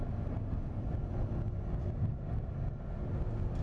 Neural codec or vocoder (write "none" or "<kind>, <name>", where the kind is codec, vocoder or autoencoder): none